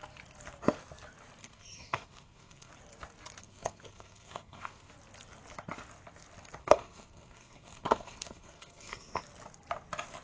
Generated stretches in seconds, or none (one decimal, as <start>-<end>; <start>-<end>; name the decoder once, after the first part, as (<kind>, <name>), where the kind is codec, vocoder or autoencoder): 1.4-2.7 (codec, SNAC); 3.4-4.9; 6.6-9.2